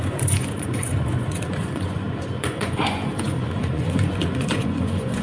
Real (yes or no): no